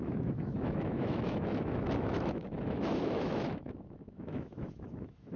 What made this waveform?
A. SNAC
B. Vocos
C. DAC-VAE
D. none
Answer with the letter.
C